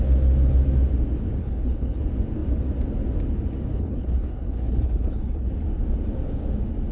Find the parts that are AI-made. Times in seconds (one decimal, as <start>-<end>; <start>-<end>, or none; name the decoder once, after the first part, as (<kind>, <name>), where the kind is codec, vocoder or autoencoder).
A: 1.4-2.0 (codec, HILCodec); 3.7-5.5